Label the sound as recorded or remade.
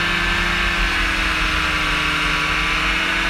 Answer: recorded